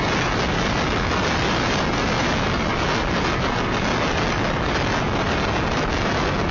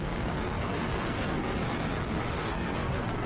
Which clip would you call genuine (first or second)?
first